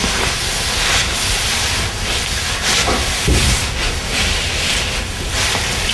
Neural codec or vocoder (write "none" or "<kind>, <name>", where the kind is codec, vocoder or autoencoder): none